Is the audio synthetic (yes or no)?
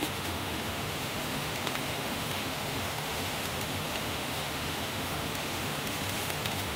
yes